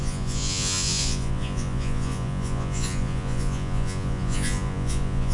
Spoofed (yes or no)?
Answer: yes